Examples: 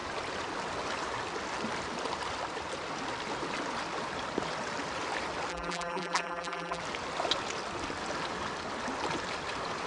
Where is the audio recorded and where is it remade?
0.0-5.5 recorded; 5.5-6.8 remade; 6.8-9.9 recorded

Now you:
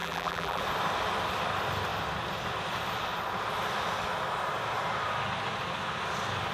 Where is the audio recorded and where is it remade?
0.0-0.6 remade; 0.6-6.5 recorded

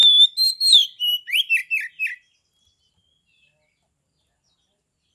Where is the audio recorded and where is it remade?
0.0-5.1 recorded

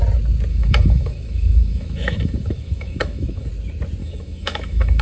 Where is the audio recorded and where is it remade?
0.0-0.5 recorded; 0.5-3.5 remade; 3.5-4.0 recorded; 4.0-5.0 remade